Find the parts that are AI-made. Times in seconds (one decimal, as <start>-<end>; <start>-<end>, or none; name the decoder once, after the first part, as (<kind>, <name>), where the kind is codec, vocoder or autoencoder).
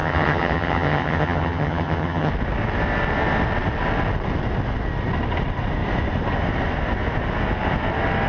0.0-2.3 (vocoder, HiFi-GAN)